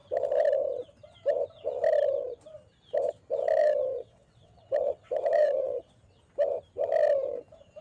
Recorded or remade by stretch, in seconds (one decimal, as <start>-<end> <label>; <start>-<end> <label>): 0.0-3.6 recorded; 3.6-5.9 remade; 5.9-7.8 recorded

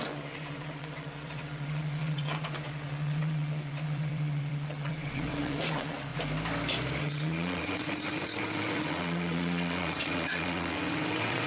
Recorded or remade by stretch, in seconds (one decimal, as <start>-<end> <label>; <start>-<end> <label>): 0.0-6.1 remade; 6.1-7.0 recorded; 7.0-11.5 remade

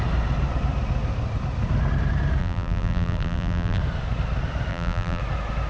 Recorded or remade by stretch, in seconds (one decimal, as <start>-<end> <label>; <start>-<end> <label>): 0.0-2.4 recorded; 2.4-3.8 remade; 3.8-4.7 recorded; 4.7-5.2 remade; 5.2-5.7 recorded

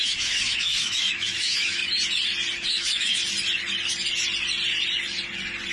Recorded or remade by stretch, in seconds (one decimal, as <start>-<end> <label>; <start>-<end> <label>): 0.0-1.8 remade; 1.8-2.7 recorded; 2.7-3.2 remade; 3.2-5.7 recorded

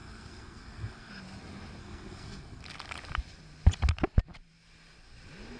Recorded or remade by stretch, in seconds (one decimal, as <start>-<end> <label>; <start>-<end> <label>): 0.0-1.1 remade; 1.1-1.8 recorded; 1.8-2.6 remade; 2.6-5.6 recorded

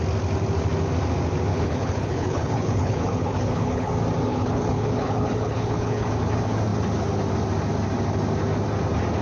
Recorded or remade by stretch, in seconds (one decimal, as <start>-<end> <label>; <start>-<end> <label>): 0.0-1.5 recorded; 1.5-3.9 remade; 3.9-4.3 recorded; 4.3-6.1 remade; 6.1-9.2 recorded

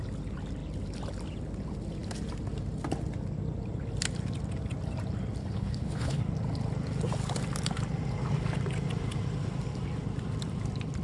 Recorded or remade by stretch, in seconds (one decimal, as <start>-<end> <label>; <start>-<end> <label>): 0.0-5.4 recorded; 5.4-6.2 remade; 6.2-11.0 recorded